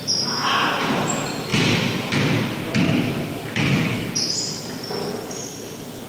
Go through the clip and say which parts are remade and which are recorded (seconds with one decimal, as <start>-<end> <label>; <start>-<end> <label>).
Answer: 0.0-3.3 recorded; 3.3-4.1 remade; 4.1-5.0 recorded; 5.0-6.1 remade